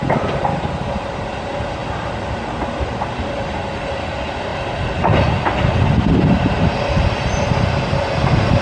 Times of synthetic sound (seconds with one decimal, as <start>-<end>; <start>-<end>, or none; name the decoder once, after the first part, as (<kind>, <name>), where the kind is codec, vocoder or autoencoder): 1.8-3.1 (vocoder, BigVGAN v2)